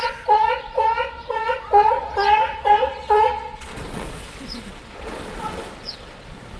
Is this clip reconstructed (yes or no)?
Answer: yes